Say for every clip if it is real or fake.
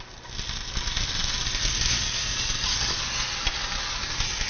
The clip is real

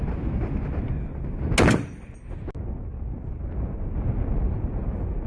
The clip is real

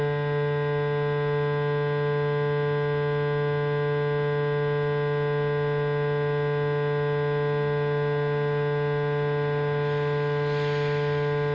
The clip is real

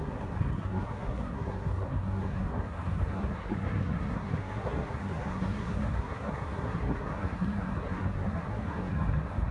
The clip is fake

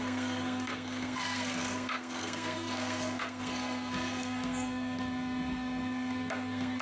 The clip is fake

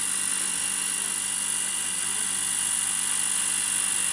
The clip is real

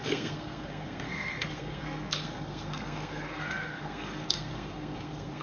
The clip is fake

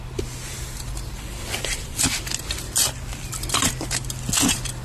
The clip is real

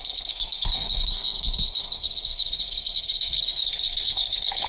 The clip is fake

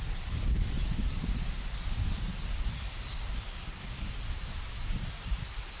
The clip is real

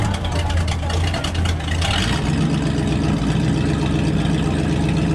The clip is real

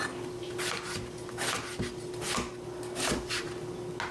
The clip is real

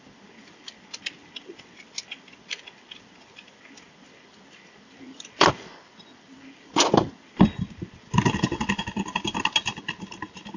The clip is real